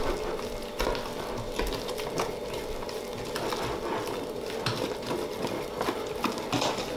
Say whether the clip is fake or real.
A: real